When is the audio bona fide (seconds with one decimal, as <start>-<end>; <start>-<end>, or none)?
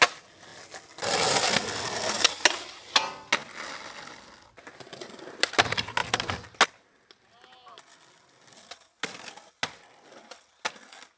0.0-11.2